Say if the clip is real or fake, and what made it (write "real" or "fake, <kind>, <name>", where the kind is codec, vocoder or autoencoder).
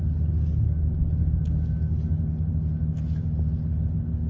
real